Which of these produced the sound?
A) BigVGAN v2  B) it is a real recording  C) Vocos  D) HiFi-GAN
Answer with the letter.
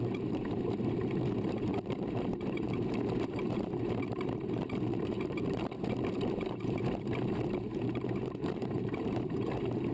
A